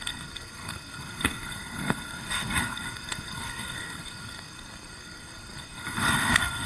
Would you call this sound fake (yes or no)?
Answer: yes